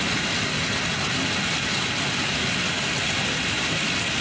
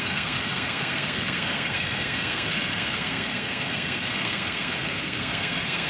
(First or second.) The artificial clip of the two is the second